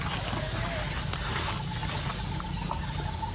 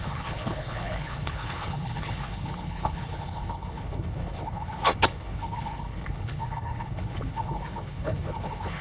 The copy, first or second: second